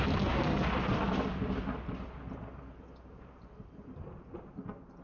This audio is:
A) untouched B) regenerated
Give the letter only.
A